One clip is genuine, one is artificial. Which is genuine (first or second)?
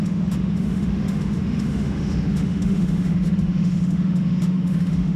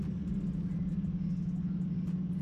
second